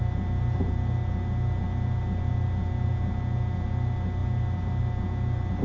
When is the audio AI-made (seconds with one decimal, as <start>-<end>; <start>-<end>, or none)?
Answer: none